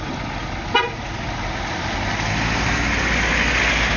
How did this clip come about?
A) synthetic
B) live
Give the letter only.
B